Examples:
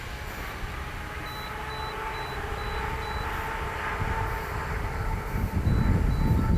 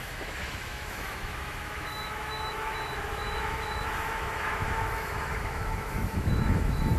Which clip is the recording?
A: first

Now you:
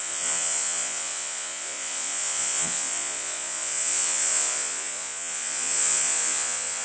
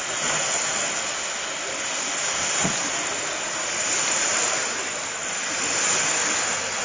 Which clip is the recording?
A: second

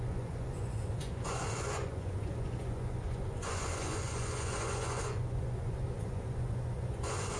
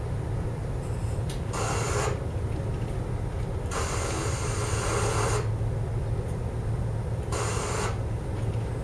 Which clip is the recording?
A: second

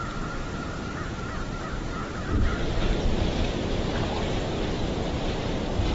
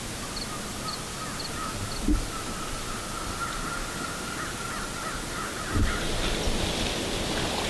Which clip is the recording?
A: second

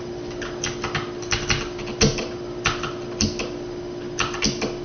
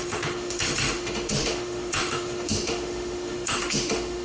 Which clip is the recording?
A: first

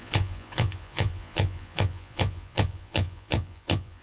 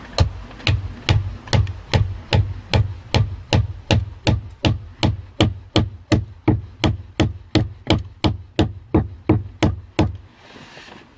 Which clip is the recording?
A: second